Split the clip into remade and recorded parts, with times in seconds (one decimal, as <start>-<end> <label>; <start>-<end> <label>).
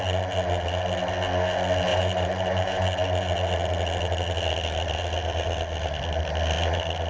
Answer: 0.0-1.9 recorded; 1.9-2.8 remade; 2.8-7.1 recorded